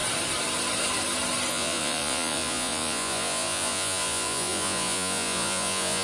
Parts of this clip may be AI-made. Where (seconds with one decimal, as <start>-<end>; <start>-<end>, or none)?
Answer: 1.5-6.0